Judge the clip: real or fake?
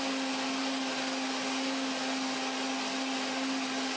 real